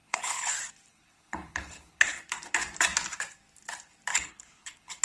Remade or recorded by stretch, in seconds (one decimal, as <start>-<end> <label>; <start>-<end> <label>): 0.0-0.5 remade; 0.5-0.9 recorded; 0.9-2.2 remade; 2.2-4.1 recorded; 4.1-5.0 remade